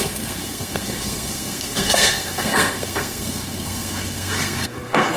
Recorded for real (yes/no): no